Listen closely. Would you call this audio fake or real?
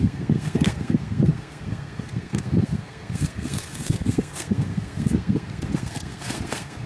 fake